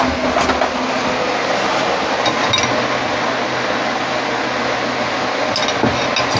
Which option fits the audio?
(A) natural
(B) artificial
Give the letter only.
A